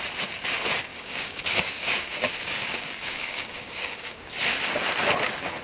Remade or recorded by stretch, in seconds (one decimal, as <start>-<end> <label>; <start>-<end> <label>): 0.0-0.9 recorded; 0.9-4.3 remade; 4.3-5.6 recorded